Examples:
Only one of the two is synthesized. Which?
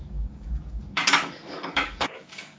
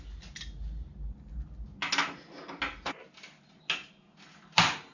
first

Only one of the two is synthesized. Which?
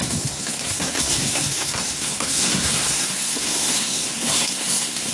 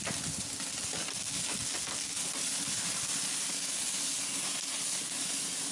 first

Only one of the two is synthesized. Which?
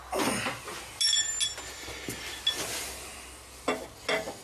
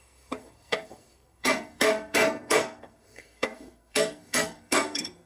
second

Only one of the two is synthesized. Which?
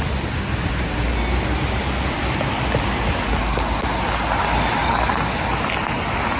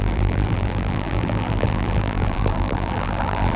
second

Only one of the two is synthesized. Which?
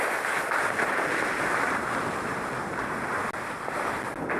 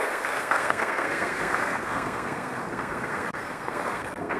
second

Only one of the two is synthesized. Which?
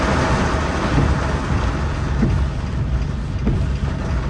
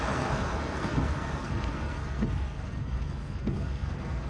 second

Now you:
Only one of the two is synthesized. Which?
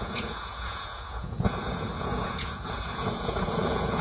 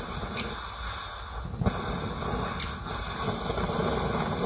first